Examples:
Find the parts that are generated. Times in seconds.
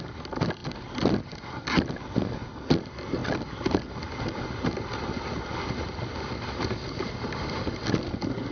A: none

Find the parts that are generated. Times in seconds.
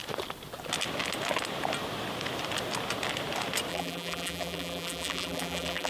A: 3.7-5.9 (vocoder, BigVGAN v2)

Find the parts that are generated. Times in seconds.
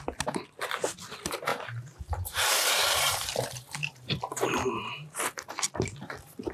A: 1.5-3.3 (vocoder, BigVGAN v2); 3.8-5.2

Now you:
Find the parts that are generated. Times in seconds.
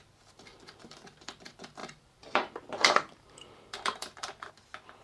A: 0.5-1.4 (vocoder, BigVGAN v2); 1.8-4.5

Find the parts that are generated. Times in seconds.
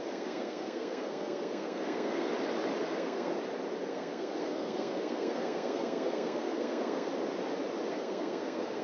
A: 0.0-2.3 (codec, SNAC); 2.8-3.3; 3.9-7.1; 7.9-8.8